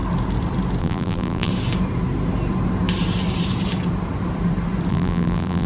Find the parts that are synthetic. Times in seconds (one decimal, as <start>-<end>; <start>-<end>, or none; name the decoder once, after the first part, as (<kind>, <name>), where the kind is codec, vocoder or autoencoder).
0.8-1.5 (vocoder, BigVGAN v2); 4.9-5.7